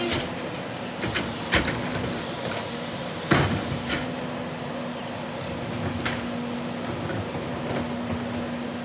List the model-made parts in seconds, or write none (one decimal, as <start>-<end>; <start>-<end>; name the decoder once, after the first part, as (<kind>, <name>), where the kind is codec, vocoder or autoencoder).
none